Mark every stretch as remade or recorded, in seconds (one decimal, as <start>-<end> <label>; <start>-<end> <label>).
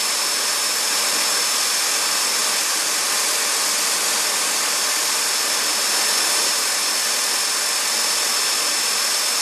0.0-9.4 recorded